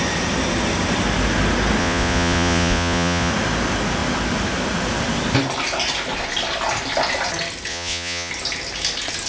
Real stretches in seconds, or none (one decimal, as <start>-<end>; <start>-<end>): 0.0-1.8; 3.3-7.7; 8.3-9.3